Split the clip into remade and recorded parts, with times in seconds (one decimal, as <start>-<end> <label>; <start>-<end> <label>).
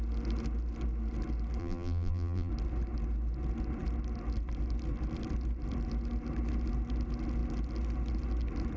0.0-1.6 recorded; 1.6-2.5 remade; 2.5-8.8 recorded